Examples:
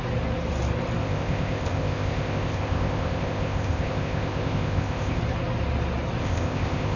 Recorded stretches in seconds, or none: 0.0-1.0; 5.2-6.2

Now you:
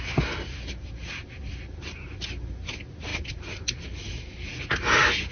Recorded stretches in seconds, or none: 0.0-5.3

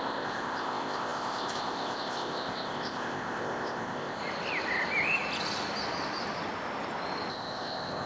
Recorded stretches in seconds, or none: 4.2-7.3

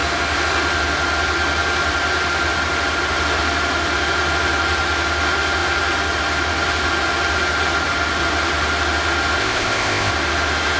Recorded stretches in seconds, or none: 0.0-9.4; 10.1-10.8